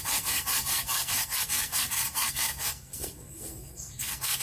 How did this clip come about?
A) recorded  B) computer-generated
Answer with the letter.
B